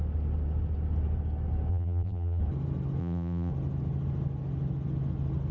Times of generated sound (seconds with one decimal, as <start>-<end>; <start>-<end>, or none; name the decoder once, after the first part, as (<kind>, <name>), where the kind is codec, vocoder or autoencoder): 1.7-2.4 (vocoder, BigVGAN v2); 3.0-3.5